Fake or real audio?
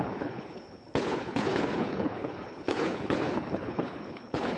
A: fake